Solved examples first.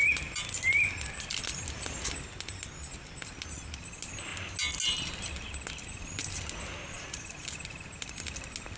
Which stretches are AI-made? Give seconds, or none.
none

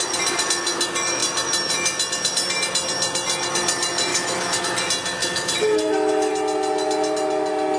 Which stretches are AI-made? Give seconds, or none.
4.1-4.6; 5.2-6.3

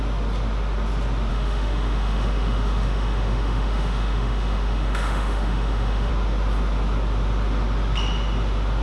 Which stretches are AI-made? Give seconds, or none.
1.3-6.1

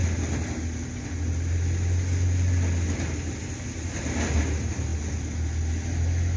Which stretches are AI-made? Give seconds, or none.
none

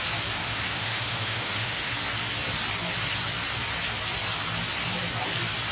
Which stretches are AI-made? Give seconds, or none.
0.4-1.9

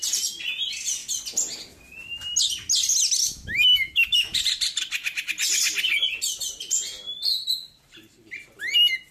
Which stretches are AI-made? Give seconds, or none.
3.2-4.4

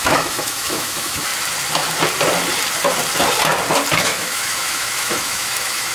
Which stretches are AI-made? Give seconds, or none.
0.0-1.3; 4.0-5.9

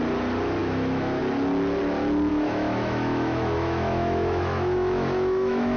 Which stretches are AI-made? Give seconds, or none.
0.6-1.2; 2.3-5.8